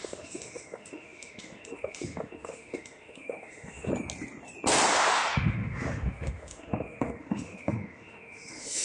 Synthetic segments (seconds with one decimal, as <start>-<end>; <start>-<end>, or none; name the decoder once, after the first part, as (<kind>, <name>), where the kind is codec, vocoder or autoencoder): 0.0-3.9 (autoencoder, DAC-VAE); 5.1-8.8